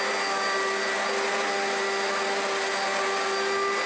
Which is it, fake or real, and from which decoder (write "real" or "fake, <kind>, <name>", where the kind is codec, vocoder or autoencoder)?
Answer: real